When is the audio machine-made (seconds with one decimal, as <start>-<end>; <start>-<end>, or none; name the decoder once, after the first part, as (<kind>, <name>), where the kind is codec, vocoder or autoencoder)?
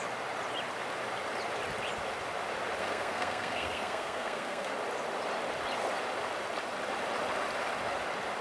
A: 2.8-4.7 (codec, SNAC)